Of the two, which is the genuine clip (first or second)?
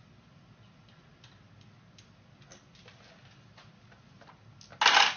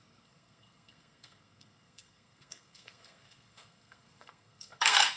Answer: first